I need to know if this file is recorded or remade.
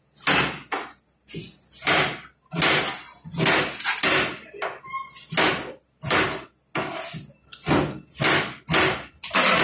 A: recorded